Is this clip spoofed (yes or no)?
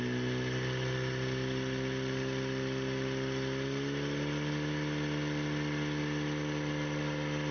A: no